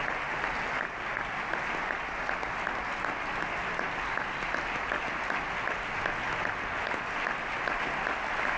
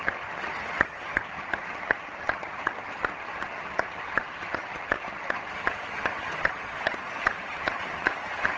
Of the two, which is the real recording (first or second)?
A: first